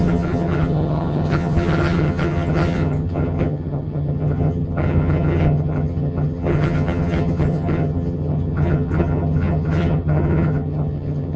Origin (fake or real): fake